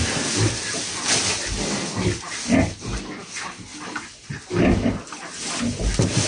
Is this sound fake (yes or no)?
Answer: no